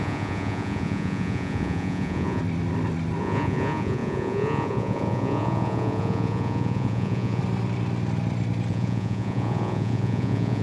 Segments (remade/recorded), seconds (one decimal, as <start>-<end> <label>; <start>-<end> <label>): 0.0-2.4 remade; 2.4-3.2 recorded; 3.2-7.4 remade; 7.4-8.7 recorded; 8.7-10.6 remade